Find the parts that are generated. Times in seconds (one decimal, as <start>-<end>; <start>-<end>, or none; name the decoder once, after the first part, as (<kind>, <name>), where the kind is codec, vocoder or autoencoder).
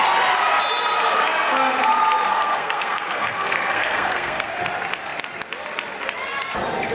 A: 2.3-4.5 (codec, SNAC)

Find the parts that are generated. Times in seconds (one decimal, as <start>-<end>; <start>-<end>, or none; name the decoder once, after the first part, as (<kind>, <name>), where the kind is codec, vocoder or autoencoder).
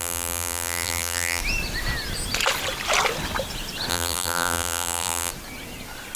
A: 0.0-1.4 (vocoder, BigVGAN v2); 3.9-5.3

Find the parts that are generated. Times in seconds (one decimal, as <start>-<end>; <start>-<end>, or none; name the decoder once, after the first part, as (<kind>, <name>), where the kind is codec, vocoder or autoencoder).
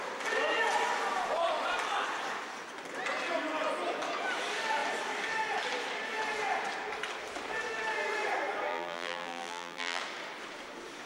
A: 8.7-10.0 (vocoder, BigVGAN v2)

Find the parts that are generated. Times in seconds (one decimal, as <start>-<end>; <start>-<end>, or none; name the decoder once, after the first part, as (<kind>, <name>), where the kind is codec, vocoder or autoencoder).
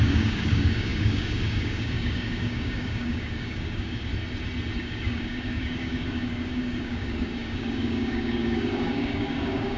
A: 0.0-4.1 (codec, DAC); 4.8-9.8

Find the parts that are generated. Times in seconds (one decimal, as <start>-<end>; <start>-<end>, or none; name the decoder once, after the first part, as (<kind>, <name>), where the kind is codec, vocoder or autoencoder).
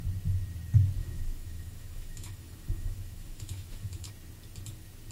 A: 1.0-4.1 (autoencoder, DAC-VAE)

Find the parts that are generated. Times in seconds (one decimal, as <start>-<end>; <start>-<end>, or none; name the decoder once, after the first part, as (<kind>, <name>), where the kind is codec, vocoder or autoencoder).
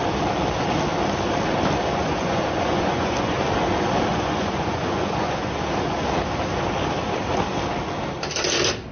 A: 2.0-3.4 (vocoder, Vocos); 4.1-5.6